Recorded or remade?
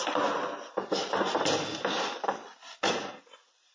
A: recorded